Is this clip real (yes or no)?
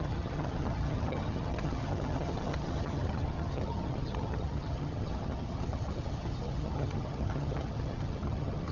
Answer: no